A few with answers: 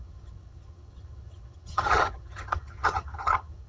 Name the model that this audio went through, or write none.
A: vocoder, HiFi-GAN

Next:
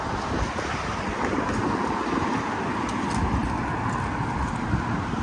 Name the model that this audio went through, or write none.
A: none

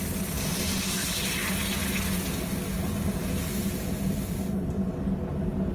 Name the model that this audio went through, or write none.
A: none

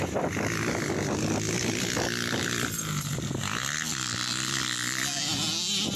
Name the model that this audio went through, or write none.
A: none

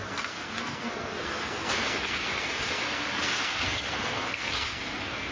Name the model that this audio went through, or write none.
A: codec, SNAC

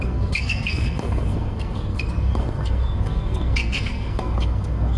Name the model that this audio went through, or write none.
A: codec, SNAC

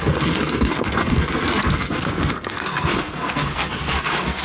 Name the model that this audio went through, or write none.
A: codec, SNAC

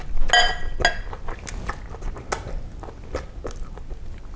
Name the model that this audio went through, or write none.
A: none